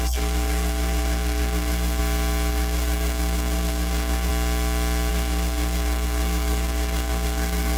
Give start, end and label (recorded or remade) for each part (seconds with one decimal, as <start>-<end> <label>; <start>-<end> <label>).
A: 0.0-2.0 remade; 2.0-2.5 recorded; 2.5-4.3 remade; 4.3-5.1 recorded; 5.1-7.8 remade